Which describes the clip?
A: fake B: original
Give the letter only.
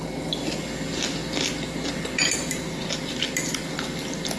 B